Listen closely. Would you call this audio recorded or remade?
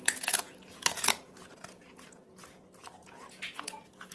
remade